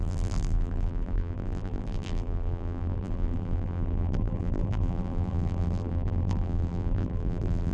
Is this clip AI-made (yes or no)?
yes